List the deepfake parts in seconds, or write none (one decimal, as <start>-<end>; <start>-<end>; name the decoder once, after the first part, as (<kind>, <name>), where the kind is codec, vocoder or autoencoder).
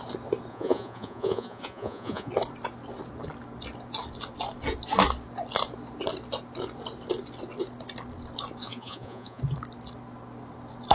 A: 0.5-2.3 (vocoder, Vocos); 8.6-9.4